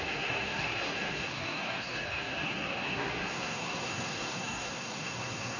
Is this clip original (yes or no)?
no